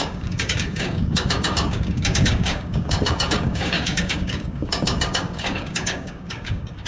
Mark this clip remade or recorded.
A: remade